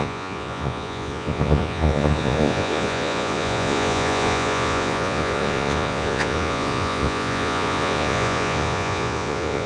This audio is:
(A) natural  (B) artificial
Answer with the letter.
B